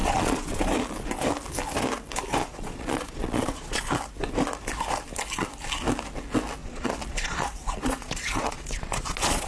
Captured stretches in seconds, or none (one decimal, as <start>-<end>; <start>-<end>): 0.6-2.4; 3.8-6.6